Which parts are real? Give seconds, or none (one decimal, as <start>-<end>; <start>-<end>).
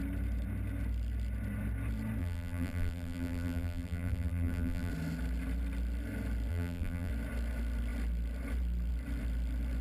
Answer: 0.0-2.2; 4.9-6.5; 7.1-9.8